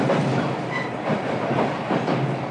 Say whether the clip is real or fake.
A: real